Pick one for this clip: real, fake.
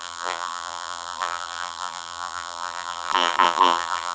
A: fake